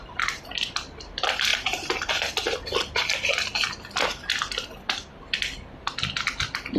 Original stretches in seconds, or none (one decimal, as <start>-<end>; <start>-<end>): 0.0-1.5; 2.1-6.8